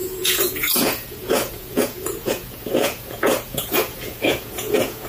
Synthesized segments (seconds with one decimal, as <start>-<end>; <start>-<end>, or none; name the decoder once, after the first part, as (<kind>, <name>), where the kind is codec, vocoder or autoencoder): 0.0-5.1 (vocoder, Vocos)